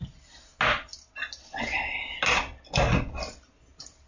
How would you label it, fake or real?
real